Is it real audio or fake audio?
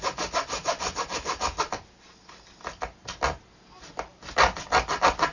real